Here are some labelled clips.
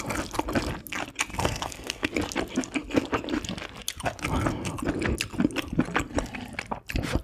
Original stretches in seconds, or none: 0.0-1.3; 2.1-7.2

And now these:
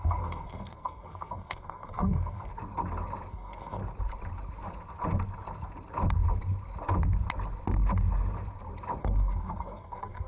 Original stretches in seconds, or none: 2.5-3.3; 3.8-9.0

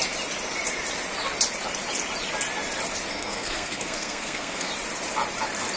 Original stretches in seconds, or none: 0.0-3.1; 4.7-5.8

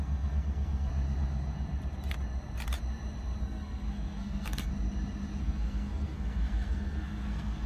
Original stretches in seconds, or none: 0.9-3.4; 4.7-5.4

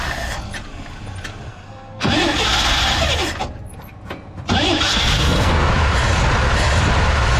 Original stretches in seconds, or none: 0.0-1.5; 2.1-4.9; 5.7-7.4

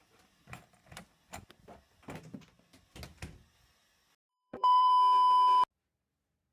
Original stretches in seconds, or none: 0.0-4.3; 4.9-6.5

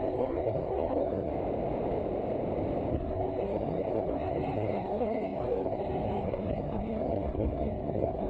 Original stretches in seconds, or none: 1.3-2.9

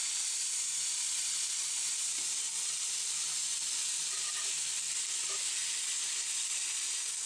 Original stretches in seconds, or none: 0.0-7.3